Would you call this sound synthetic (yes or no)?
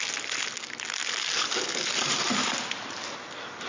no